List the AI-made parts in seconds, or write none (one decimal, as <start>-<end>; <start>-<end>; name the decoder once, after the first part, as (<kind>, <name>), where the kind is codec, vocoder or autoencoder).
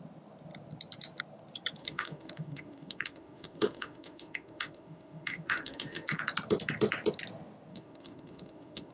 1.8-6.2 (autoencoder, DAC-VAE); 7.7-8.9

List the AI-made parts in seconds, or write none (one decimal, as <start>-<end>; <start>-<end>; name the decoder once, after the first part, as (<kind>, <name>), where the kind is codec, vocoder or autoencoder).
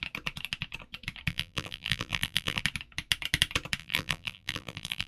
1.3-2.6 (vocoder, BigVGAN v2); 3.8-5.1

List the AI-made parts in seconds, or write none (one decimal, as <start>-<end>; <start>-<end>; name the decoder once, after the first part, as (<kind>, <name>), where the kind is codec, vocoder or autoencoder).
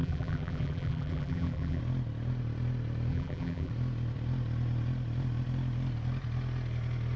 0.0-1.8 (vocoder, BigVGAN v2); 3.1-3.7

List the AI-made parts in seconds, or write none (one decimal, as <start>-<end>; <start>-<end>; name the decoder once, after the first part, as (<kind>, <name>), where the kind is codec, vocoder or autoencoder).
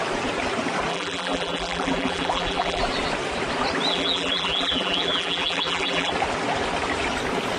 0.9-2.8 (vocoder, BigVGAN v2); 3.9-6.1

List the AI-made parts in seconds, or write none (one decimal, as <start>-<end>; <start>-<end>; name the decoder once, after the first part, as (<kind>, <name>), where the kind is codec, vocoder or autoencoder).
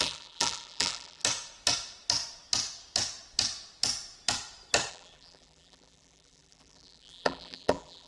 0.0-1.2 (vocoder, BigVGAN v2); 4.9-8.1